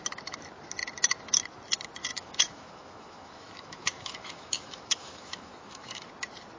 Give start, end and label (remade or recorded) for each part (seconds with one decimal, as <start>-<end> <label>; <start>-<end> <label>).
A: 0.0-2.1 recorded; 2.1-6.1 remade; 6.1-6.6 recorded